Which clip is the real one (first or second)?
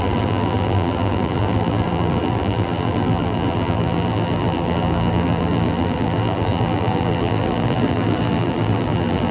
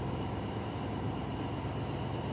second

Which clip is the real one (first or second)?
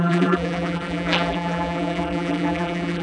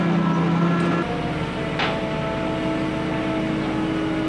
second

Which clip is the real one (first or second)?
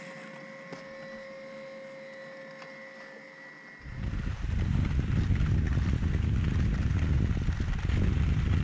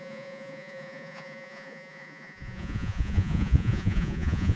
first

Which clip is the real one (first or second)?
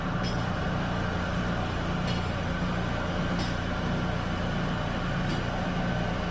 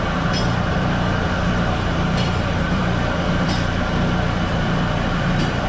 first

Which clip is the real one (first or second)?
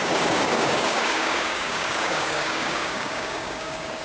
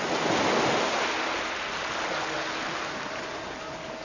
second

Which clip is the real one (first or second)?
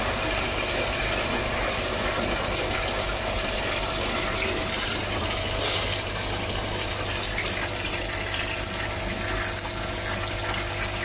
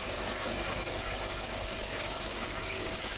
first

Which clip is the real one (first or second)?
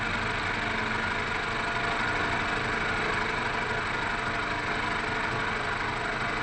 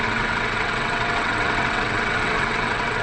first